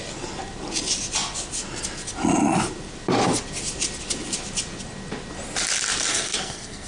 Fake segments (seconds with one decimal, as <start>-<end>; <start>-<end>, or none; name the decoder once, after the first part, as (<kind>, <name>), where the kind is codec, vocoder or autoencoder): 6.1-6.9 (codec, SNAC)